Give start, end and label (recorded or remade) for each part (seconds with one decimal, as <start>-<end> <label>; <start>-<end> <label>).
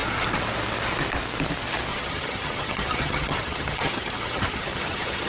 0.0-1.9 recorded; 1.9-5.3 remade